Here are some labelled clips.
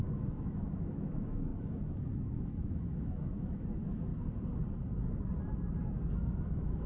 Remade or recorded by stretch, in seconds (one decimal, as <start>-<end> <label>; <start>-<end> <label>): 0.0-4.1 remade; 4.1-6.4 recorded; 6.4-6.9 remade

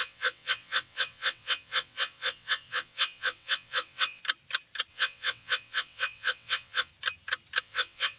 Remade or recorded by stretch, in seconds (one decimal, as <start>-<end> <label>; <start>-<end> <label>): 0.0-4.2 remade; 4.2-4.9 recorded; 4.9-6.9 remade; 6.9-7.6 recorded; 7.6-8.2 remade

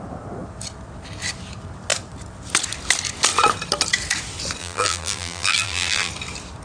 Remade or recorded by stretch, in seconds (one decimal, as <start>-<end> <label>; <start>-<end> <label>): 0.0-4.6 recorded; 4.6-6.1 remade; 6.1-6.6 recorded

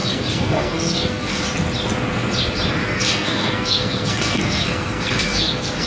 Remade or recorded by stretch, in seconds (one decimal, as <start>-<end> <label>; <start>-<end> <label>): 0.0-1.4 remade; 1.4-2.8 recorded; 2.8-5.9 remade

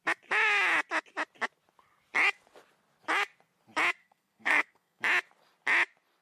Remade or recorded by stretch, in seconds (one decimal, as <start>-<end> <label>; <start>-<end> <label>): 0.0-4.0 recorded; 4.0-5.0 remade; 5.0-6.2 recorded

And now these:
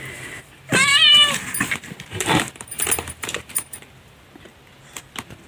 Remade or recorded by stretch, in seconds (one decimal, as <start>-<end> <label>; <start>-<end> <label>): 0.0-0.9 recorded; 0.9-4.2 remade; 4.2-5.5 recorded

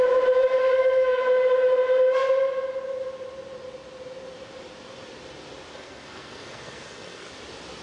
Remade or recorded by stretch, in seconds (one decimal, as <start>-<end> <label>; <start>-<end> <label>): 0.0-0.6 recorded; 0.6-1.2 remade; 1.2-5.7 recorded; 5.7-7.3 remade; 7.3-7.8 recorded